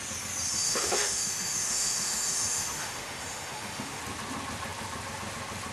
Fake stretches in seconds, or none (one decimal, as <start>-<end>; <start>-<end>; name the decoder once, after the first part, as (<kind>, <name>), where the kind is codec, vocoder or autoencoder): 0.6-4.0 (autoencoder, DAC-VAE)